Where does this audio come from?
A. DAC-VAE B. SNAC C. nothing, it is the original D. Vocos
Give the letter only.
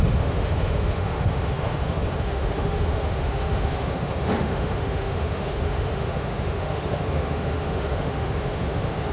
A